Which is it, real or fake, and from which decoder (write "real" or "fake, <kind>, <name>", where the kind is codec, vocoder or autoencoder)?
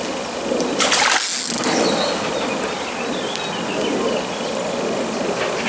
real